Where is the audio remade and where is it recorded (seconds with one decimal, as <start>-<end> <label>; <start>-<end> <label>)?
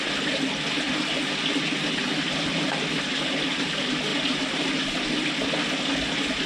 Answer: 0.0-6.5 recorded